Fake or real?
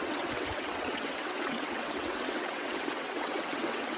fake